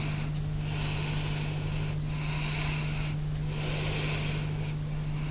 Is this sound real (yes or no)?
yes